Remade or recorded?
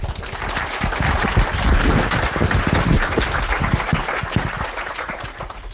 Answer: recorded